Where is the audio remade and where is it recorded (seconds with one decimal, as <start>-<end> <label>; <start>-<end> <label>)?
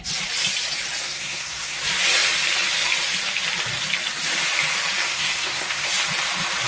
0.0-1.0 recorded; 1.0-1.8 remade; 1.8-5.0 recorded; 5.0-5.9 remade; 5.9-6.7 recorded